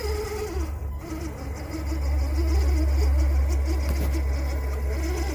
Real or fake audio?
real